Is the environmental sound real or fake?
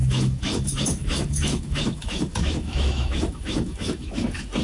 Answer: fake